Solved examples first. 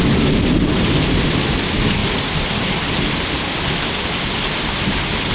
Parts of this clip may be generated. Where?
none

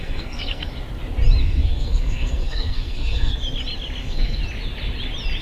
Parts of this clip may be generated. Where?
0.0-0.7; 1.4-3.3; 4.0-4.4